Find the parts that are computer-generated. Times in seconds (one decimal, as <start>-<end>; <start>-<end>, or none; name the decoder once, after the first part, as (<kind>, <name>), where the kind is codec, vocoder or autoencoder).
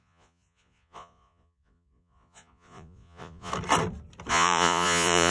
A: 0.0-3.5 (vocoder, Vocos); 4.3-5.3